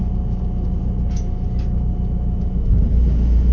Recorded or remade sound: recorded